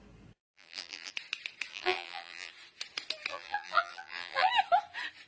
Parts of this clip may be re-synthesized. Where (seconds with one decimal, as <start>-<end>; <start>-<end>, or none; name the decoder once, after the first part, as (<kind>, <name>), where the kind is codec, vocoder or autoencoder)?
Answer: 0.4-1.1 (vocoder, BigVGAN v2); 1.7-2.5; 3.3-4.5